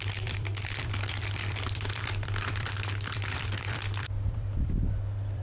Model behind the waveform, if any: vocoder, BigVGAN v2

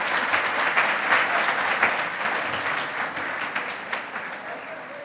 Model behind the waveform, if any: none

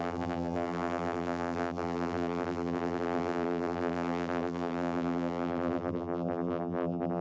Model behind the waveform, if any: vocoder, BigVGAN v2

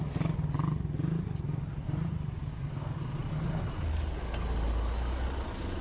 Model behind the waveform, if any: none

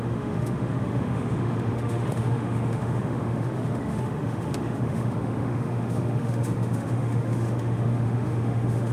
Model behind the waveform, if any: autoencoder, DAC-VAE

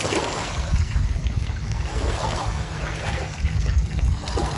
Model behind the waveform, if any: codec, SNAC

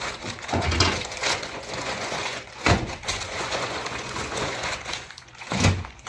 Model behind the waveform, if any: vocoder, Vocos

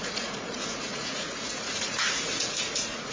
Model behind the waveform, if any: vocoder, Vocos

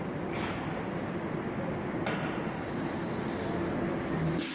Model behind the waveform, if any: none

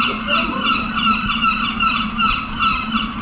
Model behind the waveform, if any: vocoder, BigVGAN v2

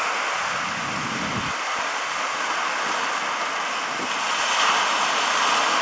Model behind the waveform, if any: none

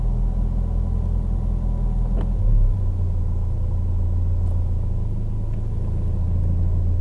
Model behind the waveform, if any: none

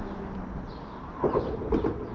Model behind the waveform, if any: none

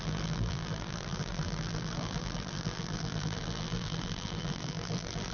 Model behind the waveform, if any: vocoder, BigVGAN v2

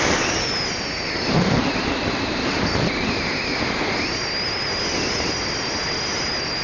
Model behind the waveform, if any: none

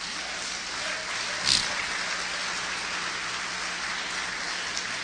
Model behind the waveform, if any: none